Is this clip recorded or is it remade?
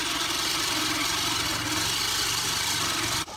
recorded